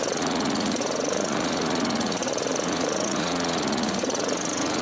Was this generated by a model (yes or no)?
yes